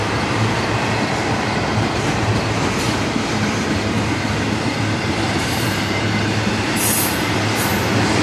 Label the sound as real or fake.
fake